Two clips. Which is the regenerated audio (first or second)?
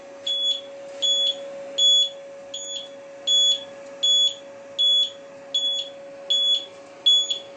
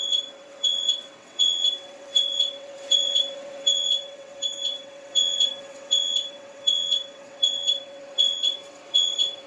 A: second